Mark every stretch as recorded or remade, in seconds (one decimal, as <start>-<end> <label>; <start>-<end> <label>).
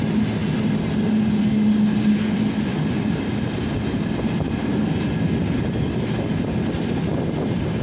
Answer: 0.0-7.8 recorded